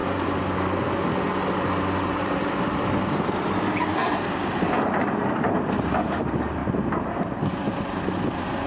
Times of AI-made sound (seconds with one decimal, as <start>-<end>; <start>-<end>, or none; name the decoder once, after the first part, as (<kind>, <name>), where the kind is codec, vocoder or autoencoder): 2.1-8.7 (vocoder, BigVGAN v2)